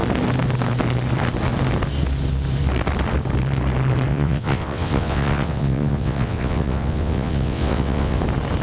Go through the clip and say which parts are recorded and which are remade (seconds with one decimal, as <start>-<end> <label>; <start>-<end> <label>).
0.0-4.1 recorded; 4.1-8.2 remade; 8.2-8.6 recorded